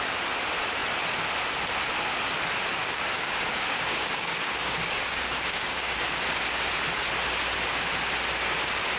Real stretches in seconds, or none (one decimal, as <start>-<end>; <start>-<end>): 0.0-2.8; 6.0-9.0